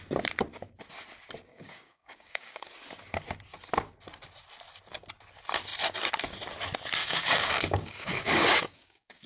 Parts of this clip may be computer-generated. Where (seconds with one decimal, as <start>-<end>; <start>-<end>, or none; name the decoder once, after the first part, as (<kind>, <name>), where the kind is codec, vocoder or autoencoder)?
1.5-2.7 (codec, DAC); 7.0-9.3